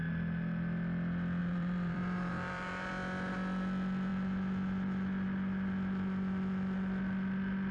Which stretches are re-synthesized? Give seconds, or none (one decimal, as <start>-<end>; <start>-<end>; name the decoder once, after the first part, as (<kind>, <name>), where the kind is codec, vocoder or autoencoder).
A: 1.4-2.9 (vocoder, BigVGAN v2)